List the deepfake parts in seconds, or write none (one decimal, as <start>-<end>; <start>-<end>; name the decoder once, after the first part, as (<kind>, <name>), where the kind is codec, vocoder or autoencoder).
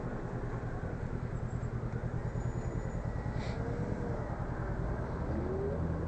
none